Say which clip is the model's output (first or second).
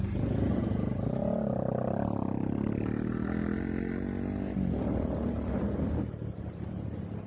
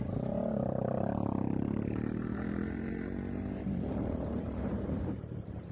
second